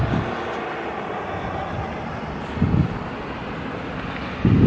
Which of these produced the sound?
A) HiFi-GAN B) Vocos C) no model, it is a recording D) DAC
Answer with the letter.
C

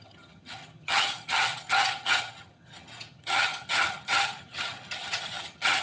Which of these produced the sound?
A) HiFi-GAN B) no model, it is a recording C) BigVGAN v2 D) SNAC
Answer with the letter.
A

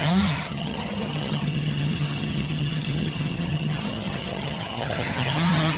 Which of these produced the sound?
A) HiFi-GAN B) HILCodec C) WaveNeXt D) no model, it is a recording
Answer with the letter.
A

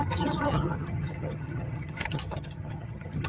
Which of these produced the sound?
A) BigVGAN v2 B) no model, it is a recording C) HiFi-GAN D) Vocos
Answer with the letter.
C